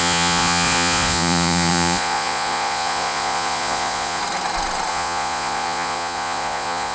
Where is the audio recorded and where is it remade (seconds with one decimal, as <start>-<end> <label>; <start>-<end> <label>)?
0.0-4.2 remade; 4.2-4.9 recorded; 4.9-6.9 remade